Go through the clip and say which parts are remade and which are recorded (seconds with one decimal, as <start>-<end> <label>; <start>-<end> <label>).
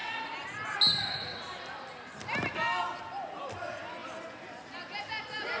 0.0-5.6 recorded